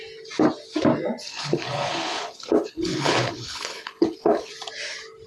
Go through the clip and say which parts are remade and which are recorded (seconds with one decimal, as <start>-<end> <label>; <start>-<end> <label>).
0.0-1.3 recorded; 1.3-4.5 remade; 4.5-5.3 recorded